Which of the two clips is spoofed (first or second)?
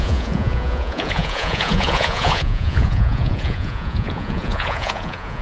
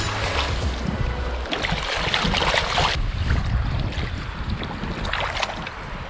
first